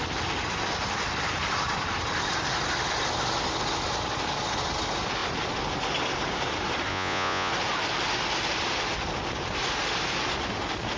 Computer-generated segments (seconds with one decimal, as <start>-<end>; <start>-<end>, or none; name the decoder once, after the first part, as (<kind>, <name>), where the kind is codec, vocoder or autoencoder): 6.9-7.5 (vocoder, Vocos)